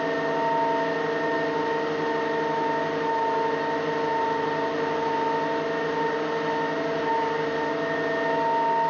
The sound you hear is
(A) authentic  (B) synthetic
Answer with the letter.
A